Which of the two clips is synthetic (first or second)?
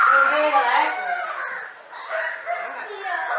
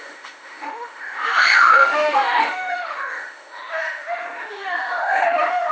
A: second